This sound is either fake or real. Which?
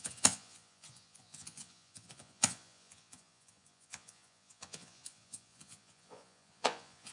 fake